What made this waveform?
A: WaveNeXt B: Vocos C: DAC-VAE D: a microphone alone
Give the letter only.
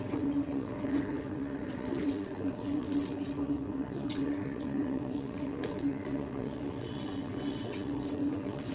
A